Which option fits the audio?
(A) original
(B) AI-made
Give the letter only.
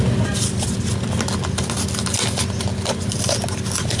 A